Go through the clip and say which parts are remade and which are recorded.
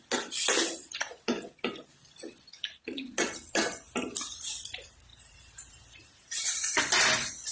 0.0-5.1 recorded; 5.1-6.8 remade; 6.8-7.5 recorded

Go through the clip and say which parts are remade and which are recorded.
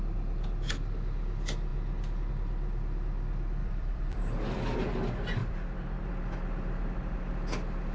0.0-3.6 recorded; 3.6-4.9 remade; 4.9-5.4 recorded; 5.4-6.1 remade; 6.1-7.9 recorded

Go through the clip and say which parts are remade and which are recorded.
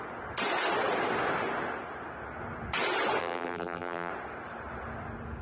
0.0-3.2 recorded; 3.2-4.1 remade; 4.1-5.4 recorded